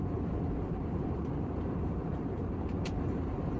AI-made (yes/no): yes